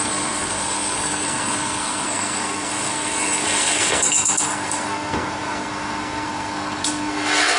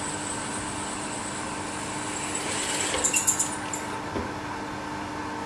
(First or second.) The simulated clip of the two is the first